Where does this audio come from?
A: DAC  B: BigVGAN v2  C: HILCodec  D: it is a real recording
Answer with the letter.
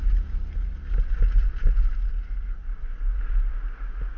D